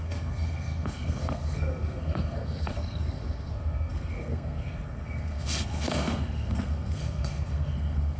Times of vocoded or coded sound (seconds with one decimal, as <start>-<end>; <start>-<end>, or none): 0.0-8.2